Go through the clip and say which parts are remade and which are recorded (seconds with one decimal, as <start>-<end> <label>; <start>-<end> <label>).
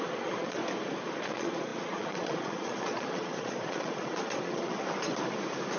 0.0-0.6 remade; 0.6-1.2 recorded; 1.2-4.7 remade; 4.7-5.8 recorded